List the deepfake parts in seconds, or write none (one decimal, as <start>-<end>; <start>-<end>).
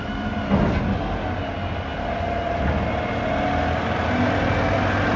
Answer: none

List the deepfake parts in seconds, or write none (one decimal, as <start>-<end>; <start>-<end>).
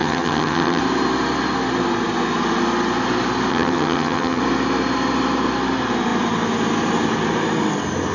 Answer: 0.0-0.8; 3.5-4.4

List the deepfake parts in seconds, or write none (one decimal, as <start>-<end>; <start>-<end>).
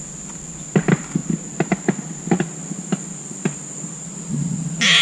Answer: none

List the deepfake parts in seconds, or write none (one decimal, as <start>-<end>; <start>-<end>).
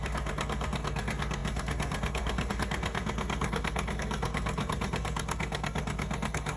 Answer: 0.0-6.6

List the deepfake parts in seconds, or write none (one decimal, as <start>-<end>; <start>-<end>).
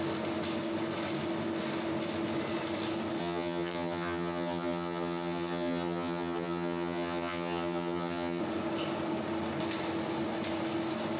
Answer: 3.2-8.4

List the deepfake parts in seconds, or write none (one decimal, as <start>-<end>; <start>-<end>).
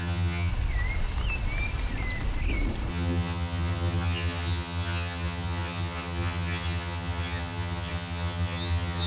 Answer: 0.0-0.5; 2.9-9.1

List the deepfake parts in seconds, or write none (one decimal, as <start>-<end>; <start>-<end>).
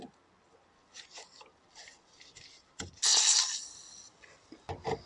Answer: none